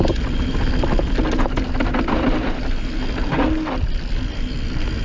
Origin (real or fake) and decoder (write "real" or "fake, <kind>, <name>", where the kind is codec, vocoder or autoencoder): real